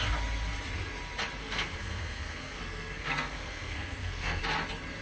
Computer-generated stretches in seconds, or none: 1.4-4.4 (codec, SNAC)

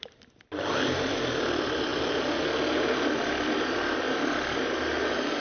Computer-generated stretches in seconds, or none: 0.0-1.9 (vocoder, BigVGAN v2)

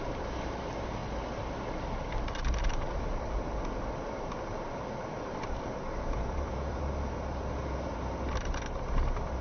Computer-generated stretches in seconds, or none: 0.0-1.0 (vocoder, BigVGAN v2); 2.6-3.1; 5.5-9.4